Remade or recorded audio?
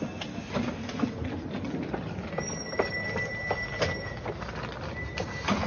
recorded